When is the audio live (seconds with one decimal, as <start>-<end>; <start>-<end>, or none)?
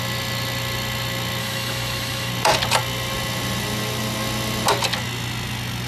0.0-1.4; 2.3-5.9